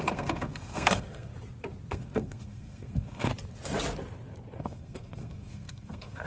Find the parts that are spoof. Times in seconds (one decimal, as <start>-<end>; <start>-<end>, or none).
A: 0.0-1.3; 1.9-3.3; 4.6-6.3